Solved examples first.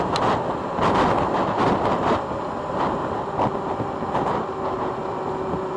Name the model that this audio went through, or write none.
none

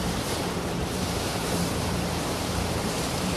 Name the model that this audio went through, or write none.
vocoder, BigVGAN v2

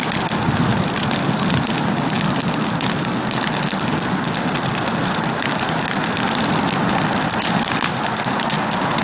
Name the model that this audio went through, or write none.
none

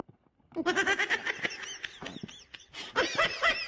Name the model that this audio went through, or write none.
none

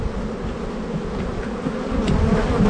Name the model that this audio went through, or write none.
none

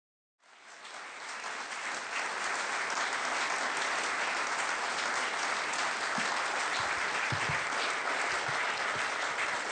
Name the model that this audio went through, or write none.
none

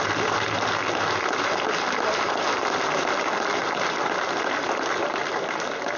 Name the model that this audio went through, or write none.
none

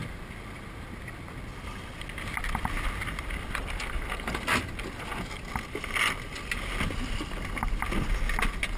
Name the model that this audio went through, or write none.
none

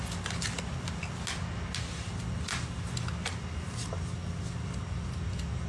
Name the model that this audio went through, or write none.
none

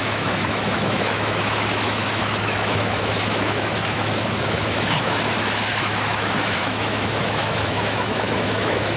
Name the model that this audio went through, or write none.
autoencoder, DAC-VAE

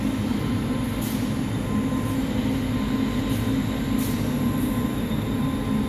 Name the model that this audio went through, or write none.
none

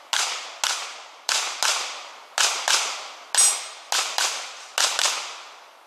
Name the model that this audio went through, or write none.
none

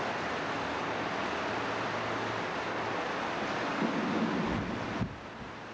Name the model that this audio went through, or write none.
none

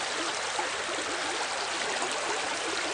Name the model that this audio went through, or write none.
none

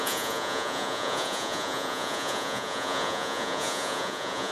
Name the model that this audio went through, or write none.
vocoder, Vocos